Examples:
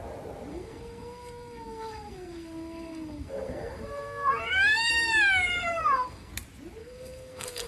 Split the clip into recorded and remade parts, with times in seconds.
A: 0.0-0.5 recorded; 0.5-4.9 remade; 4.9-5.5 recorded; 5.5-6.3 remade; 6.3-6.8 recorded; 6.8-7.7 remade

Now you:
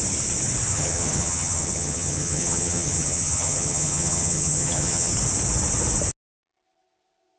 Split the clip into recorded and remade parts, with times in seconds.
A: 0.0-0.7 recorded; 0.7-5.1 remade; 5.1-7.4 recorded